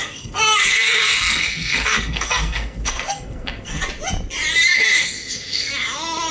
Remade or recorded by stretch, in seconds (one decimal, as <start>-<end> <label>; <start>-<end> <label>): 0.0-3.8 remade; 3.8-5.0 recorded; 5.0-5.7 remade; 5.7-6.3 recorded